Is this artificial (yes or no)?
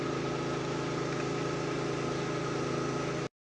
no